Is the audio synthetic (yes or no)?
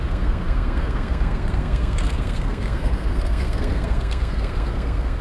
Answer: yes